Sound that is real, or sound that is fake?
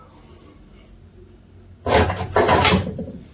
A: real